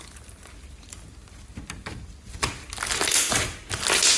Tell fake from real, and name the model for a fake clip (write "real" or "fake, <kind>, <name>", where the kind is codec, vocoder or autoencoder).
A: real